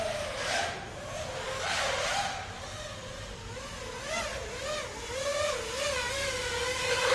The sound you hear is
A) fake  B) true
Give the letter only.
B